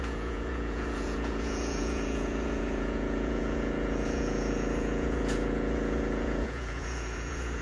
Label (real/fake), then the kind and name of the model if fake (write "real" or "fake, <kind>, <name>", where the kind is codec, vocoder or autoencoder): fake, vocoder, Vocos